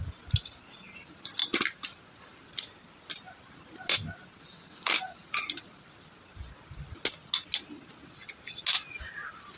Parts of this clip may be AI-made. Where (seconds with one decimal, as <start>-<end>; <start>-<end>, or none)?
none